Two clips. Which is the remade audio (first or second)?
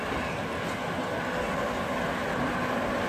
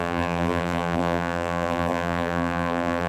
second